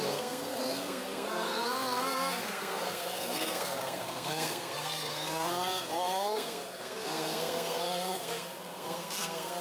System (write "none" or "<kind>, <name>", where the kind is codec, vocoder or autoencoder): codec, SNAC